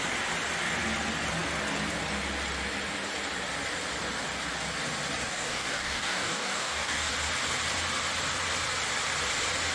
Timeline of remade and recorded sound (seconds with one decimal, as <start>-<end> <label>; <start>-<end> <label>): 0.0-5.3 recorded; 5.3-7.1 remade; 7.1-9.7 recorded